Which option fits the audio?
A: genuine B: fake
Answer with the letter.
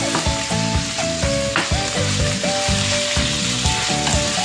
A